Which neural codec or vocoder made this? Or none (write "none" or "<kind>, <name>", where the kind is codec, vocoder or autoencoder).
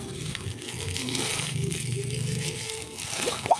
codec, SNAC